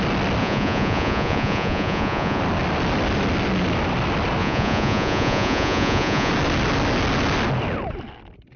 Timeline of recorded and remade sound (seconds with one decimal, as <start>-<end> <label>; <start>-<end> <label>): 0.0-0.4 recorded; 0.4-2.4 remade; 2.4-4.4 recorded; 4.4-6.3 remade; 6.3-8.6 recorded